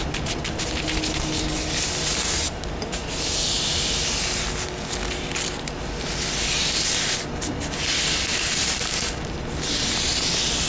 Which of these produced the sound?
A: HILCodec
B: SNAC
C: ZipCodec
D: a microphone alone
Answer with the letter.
D